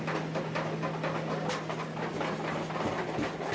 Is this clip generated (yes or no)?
no